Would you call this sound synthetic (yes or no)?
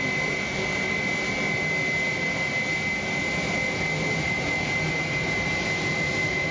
no